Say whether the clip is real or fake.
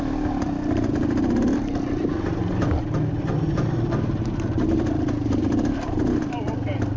fake